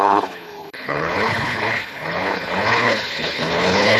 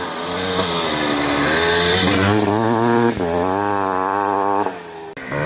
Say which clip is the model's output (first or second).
first